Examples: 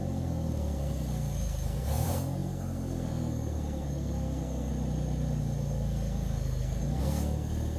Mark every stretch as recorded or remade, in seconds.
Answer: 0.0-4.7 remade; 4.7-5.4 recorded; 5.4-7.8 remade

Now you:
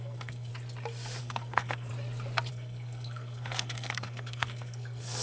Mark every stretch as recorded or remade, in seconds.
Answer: 0.0-0.5 remade; 0.5-1.2 recorded; 1.2-1.9 remade; 1.9-2.5 recorded; 2.5-5.2 remade

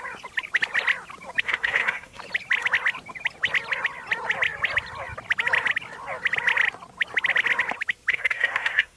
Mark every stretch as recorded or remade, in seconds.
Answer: 0.0-1.4 recorded; 1.4-2.2 remade; 2.2-8.1 recorded; 8.1-9.0 remade